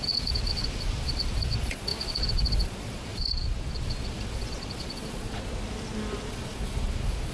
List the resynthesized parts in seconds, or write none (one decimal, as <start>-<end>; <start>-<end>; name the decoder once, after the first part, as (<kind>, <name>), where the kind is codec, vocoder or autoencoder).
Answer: 0.0-5.5 (vocoder, Vocos); 6.3-7.3